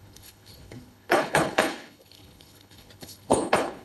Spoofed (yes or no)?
yes